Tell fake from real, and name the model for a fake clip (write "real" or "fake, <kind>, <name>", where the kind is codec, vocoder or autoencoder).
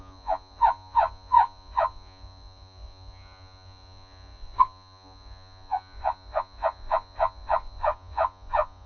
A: fake, vocoder, Vocos